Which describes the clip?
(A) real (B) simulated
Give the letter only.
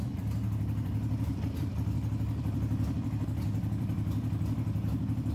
B